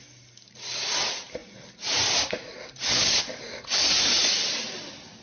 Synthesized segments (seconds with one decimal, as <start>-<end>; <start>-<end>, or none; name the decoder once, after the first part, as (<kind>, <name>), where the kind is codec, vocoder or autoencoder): none